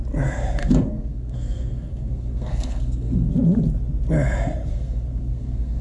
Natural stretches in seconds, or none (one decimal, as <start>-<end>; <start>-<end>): 0.0-0.6; 3.3-4.7